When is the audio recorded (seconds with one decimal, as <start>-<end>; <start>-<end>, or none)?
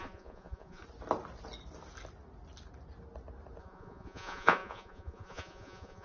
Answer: 0.8-3.6